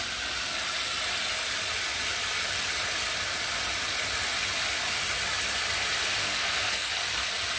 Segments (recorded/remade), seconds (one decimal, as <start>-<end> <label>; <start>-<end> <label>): 0.0-6.2 recorded; 6.2-6.9 remade; 6.9-7.6 recorded